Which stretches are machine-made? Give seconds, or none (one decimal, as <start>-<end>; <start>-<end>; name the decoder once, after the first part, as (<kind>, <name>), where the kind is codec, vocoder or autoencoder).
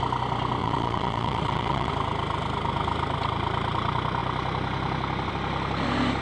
0.6-1.9 (vocoder, WaveNeXt)